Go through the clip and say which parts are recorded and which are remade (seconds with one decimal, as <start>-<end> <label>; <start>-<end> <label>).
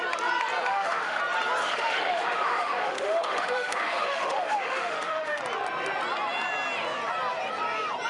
0.0-0.7 recorded; 0.7-1.2 remade; 1.2-1.6 recorded; 1.6-5.4 remade; 5.4-8.1 recorded